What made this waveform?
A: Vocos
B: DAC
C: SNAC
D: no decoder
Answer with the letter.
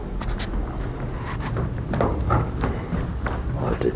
D